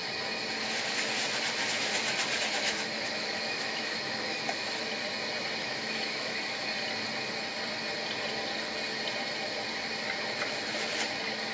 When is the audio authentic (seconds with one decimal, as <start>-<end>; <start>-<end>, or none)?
0.0-2.4; 4.8-5.6; 6.7-11.5